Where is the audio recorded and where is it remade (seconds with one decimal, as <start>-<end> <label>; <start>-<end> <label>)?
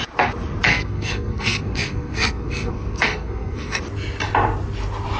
0.0-0.7 recorded; 0.7-3.8 remade; 3.8-5.2 recorded